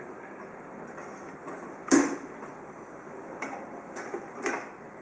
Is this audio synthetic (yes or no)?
no